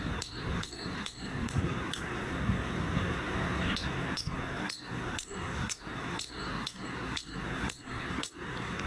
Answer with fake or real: fake